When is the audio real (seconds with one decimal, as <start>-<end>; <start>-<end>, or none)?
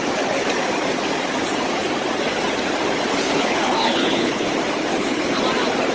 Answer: 0.0-3.2; 4.5-4.9; 5.4-5.9